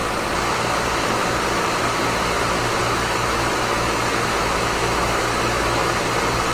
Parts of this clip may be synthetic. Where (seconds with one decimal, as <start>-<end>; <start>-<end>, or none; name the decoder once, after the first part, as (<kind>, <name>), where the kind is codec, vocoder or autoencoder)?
2.8-5.9 (autoencoder, DAC-VAE)